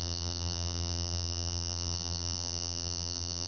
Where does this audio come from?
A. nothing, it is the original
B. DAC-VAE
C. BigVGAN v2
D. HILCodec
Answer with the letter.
C